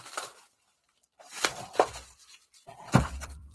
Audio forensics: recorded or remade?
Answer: remade